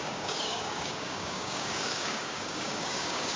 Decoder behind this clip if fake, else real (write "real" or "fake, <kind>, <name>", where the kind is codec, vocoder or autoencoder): fake, codec, DAC